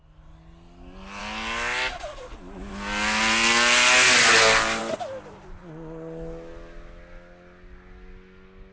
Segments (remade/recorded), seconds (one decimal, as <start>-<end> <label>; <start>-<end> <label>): 0.0-8.7 recorded